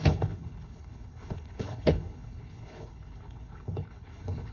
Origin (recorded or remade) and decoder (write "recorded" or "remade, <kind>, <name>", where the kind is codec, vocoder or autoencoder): remade, codec, HILCodec